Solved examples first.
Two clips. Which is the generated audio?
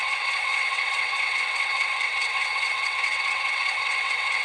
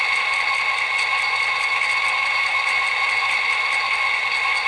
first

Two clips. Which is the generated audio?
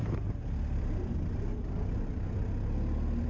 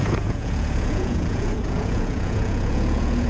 second